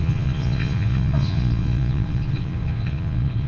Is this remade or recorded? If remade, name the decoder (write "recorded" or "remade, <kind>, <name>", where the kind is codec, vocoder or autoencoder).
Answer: remade, vocoder, Vocos